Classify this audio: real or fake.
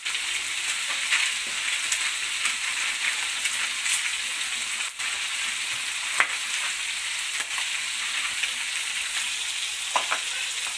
real